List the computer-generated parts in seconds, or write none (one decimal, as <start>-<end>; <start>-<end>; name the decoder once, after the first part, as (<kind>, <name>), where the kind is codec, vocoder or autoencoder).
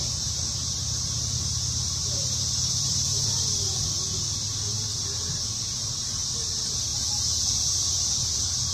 0.0-3.3 (vocoder, BigVGAN v2); 5.6-8.7